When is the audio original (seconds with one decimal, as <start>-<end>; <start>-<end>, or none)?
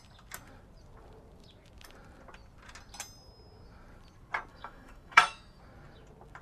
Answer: 0.0-4.5; 5.6-6.4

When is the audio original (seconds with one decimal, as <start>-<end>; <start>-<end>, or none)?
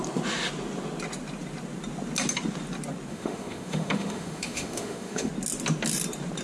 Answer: 0.0-3.1; 5.3-6.4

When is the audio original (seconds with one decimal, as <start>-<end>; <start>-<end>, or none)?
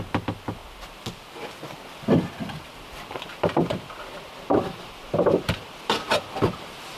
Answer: 0.0-7.0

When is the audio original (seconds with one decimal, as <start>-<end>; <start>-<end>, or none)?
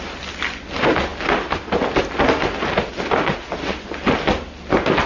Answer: 0.0-5.1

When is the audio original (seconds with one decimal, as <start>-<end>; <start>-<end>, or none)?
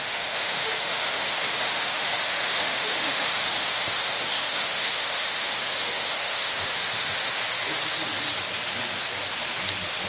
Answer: 7.4-10.1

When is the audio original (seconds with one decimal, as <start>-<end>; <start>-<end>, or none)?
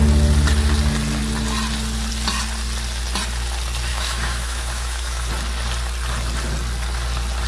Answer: 0.0-3.9; 5.3-7.5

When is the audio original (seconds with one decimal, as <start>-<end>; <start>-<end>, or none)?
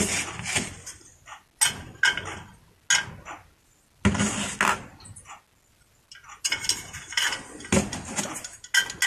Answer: 0.0-9.1